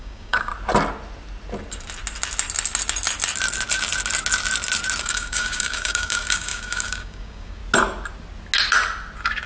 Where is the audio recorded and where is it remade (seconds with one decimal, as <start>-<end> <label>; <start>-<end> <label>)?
0.0-0.5 remade; 0.5-5.0 recorded; 5.0-7.6 remade; 7.6-9.5 recorded